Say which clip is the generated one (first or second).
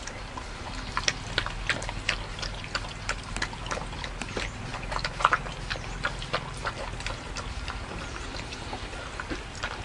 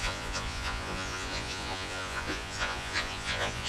second